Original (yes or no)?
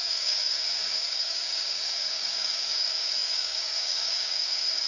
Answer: no